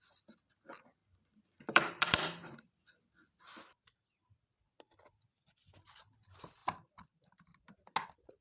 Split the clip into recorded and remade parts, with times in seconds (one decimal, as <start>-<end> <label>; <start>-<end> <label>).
0.0-1.0 recorded; 1.0-3.0 remade; 3.0-8.4 recorded